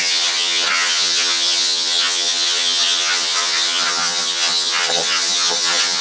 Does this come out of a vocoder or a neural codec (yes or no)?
yes